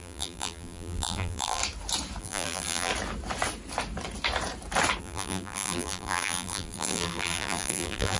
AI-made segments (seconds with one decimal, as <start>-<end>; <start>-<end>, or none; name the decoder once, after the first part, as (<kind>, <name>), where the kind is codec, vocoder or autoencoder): 0.0-1.6 (vocoder, BigVGAN v2); 2.2-2.9; 5.0-8.2